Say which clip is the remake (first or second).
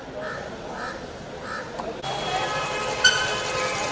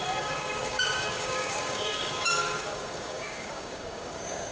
second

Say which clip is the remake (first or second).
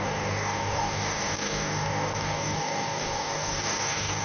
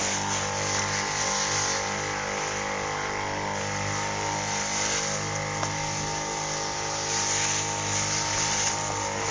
first